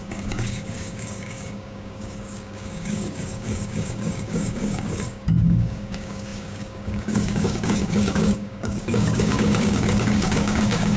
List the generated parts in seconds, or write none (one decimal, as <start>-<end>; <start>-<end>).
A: 0.0-11.0